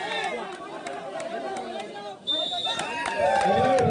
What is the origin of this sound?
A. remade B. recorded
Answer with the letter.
A